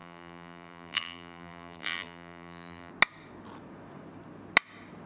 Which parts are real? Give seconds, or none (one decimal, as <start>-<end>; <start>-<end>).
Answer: 2.9-5.1